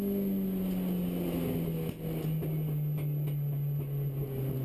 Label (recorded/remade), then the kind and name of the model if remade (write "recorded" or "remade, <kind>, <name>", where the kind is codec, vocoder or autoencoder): recorded